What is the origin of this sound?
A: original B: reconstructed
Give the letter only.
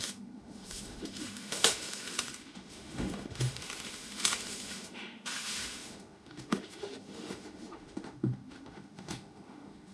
B